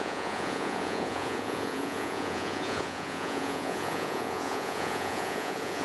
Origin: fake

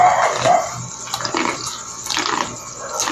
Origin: real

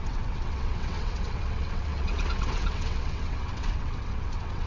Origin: fake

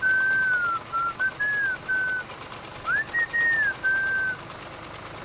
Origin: real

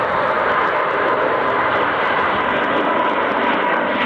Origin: fake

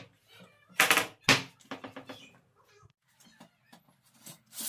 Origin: real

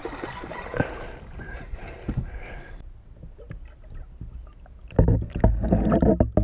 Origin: real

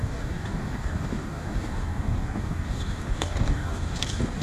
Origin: fake